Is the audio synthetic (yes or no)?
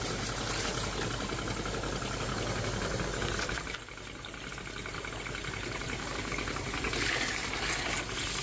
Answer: no